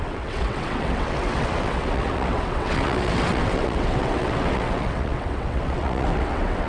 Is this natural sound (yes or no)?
no